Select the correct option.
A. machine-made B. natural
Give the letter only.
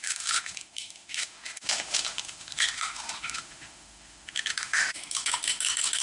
A